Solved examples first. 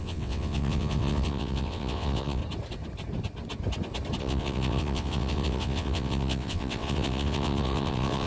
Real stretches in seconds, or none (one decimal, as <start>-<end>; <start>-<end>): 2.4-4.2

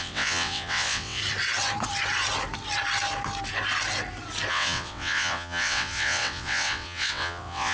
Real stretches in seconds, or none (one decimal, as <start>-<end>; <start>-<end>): 1.2-4.5

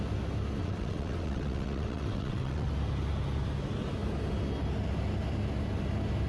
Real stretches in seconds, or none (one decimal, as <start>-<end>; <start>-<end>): 0.0-0.6; 2.7-6.3

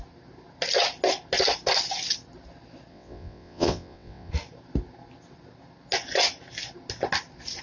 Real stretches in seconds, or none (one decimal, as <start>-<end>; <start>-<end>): 0.0-2.9; 4.3-7.6